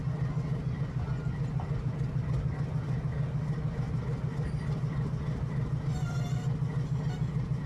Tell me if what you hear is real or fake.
real